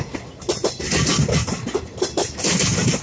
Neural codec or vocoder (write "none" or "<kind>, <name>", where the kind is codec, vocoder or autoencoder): none